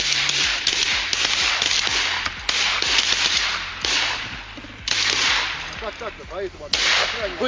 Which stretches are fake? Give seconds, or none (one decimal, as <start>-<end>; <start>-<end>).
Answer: none